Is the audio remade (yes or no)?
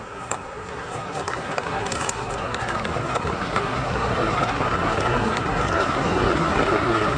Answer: yes